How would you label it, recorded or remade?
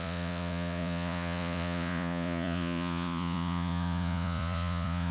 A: remade